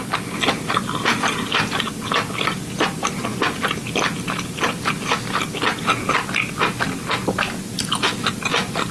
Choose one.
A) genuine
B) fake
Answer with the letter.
A